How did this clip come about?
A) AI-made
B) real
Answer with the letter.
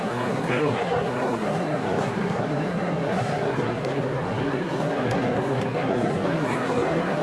A